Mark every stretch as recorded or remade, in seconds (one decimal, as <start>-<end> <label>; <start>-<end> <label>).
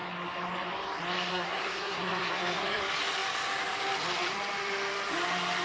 0.0-1.3 recorded; 1.3-2.8 remade; 2.8-5.6 recorded